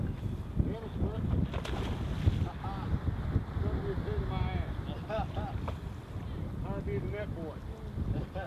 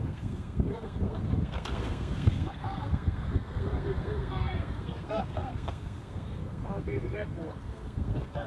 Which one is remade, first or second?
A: second